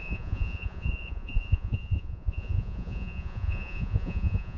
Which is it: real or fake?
fake